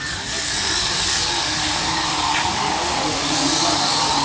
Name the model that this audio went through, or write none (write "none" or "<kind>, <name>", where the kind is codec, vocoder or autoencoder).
codec, DAC